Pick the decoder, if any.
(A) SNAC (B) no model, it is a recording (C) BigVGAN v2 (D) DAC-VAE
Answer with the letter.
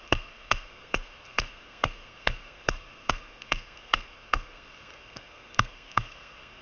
A